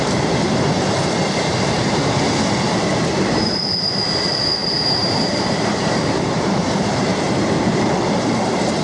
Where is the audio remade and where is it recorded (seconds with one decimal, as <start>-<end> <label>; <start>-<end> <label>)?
0.0-2.0 remade; 2.0-2.7 recorded; 2.7-7.1 remade; 7.1-8.1 recorded; 8.1-8.8 remade